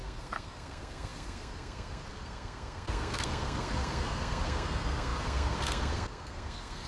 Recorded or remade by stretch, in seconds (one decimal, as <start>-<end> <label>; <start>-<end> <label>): 0.0-6.9 remade